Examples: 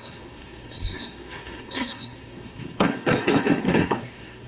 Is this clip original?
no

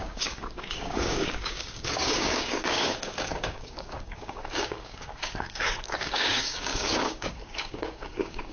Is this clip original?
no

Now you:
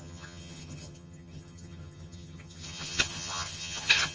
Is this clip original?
no